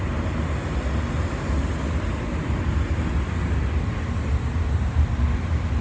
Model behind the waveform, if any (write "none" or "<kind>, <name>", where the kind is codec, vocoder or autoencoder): none